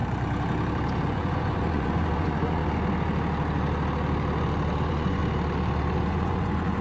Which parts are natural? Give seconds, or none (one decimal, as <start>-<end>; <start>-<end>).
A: 0.0-1.0; 2.6-4.8; 5.2-6.1